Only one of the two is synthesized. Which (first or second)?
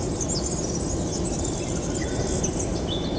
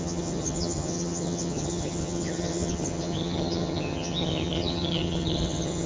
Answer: second